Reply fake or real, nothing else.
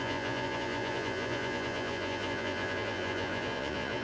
fake